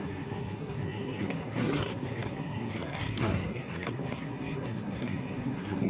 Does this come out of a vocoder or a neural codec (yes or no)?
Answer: yes